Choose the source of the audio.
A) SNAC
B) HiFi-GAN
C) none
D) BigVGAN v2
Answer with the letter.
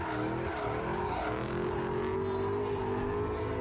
C